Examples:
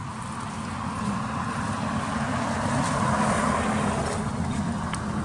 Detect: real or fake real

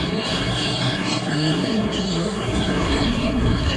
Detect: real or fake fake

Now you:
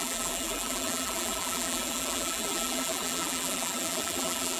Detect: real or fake fake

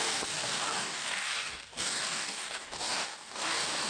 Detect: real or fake fake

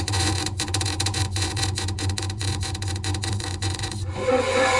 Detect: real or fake fake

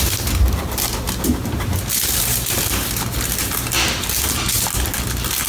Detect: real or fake real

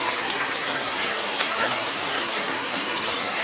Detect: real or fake fake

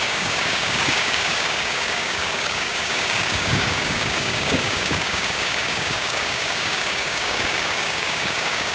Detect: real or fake fake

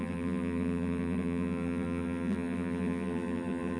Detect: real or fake fake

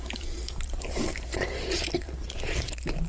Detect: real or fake fake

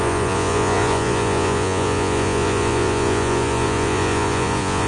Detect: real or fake fake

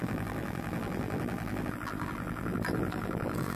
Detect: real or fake fake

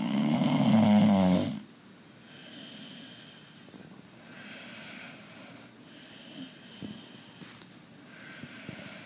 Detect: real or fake real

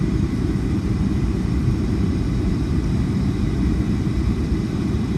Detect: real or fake fake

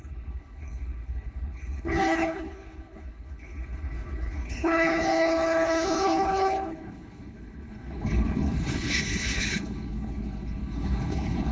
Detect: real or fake fake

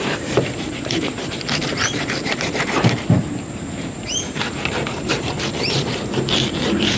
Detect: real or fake fake